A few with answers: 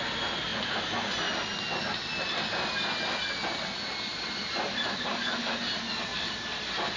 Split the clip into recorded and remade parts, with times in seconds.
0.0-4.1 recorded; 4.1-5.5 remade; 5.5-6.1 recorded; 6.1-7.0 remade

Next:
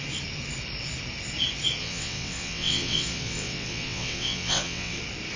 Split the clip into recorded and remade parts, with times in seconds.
0.0-1.8 recorded; 1.8-5.0 remade; 5.0-5.4 recorded

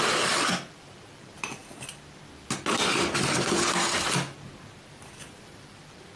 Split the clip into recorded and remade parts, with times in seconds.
0.0-1.6 remade; 1.6-5.3 recorded; 5.3-6.2 remade

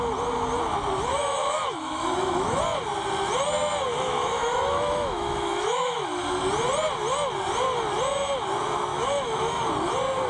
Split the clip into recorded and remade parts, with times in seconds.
0.0-1.1 recorded; 1.1-2.6 remade; 2.6-3.9 recorded; 3.9-6.2 remade; 6.2-8.9 recorded; 8.9-9.6 remade; 9.6-10.3 recorded

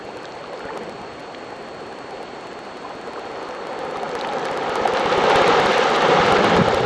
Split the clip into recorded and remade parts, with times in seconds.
0.0-6.9 recorded

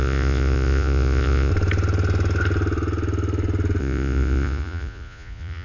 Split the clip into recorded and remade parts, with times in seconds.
0.0-1.5 remade; 1.5-3.8 recorded; 3.8-5.6 remade

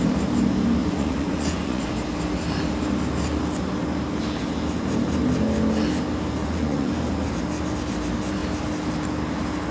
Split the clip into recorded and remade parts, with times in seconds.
0.0-0.8 recorded; 0.8-1.9 remade; 1.9-6.4 recorded; 6.4-6.9 remade; 6.9-9.7 recorded